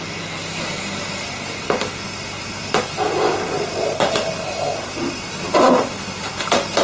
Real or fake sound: real